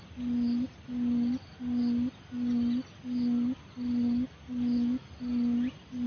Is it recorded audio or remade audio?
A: recorded